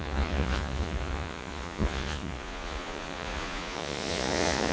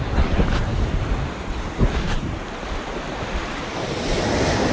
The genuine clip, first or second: second